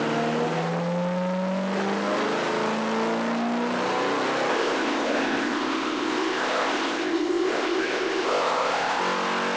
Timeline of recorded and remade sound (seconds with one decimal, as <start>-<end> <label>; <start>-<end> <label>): 0.0-4.5 recorded; 4.5-9.0 remade; 9.0-9.6 recorded